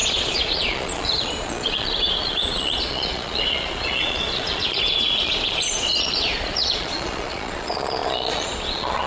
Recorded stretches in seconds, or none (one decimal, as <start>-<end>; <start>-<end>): none